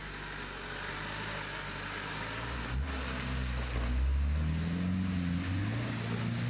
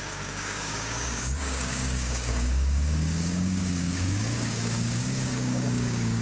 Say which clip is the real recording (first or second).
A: first